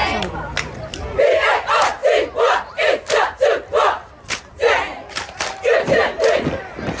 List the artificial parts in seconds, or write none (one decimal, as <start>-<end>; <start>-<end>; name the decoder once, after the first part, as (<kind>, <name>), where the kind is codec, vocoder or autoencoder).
none